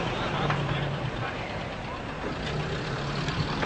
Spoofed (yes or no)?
no